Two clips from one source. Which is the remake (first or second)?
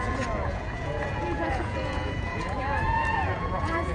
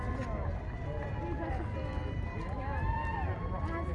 first